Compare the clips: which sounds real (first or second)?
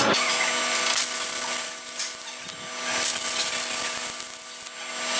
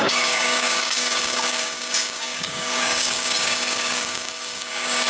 first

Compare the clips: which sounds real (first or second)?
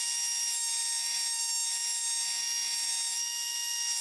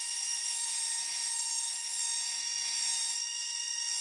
first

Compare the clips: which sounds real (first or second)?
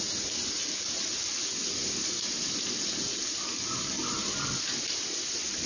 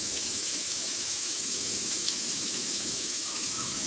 first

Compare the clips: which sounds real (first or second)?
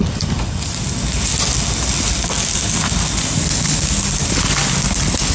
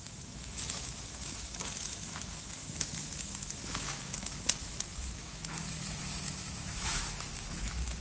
first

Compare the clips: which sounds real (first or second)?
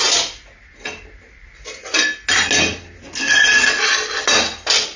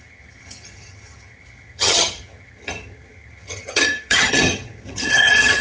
first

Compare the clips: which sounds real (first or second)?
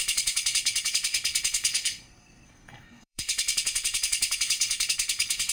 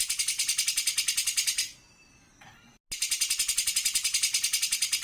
second